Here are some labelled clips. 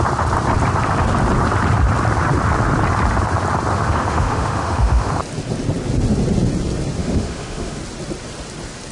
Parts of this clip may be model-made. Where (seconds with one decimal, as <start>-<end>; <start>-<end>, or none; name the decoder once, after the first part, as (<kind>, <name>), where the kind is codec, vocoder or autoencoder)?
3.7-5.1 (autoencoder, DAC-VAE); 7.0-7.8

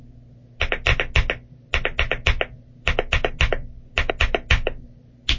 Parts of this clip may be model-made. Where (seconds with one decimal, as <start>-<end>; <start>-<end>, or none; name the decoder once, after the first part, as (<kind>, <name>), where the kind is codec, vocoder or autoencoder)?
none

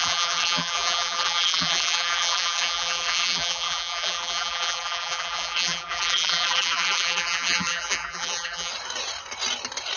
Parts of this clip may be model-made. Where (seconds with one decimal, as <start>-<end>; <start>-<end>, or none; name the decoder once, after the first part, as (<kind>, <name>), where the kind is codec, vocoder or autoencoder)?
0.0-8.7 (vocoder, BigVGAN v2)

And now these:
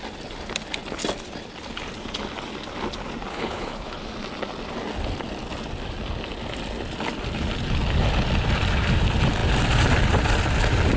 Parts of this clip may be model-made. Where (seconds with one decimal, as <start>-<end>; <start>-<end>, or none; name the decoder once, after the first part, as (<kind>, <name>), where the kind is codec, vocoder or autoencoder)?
3.3-4.0 (codec, HILCodec)

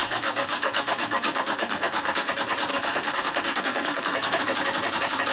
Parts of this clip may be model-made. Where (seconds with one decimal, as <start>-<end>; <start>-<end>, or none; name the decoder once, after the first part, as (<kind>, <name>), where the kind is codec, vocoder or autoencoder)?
0.0-2.3 (codec, SNAC); 2.7-4.4